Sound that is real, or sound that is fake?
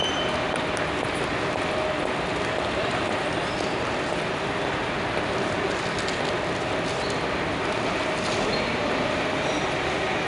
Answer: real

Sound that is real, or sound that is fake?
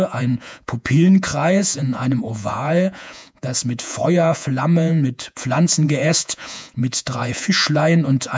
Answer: fake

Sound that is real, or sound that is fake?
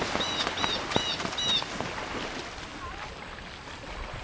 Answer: real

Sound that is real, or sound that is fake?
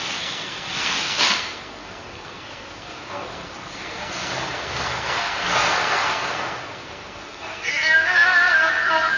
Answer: fake